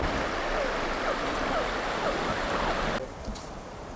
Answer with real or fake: real